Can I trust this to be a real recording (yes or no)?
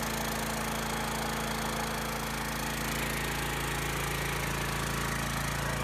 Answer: yes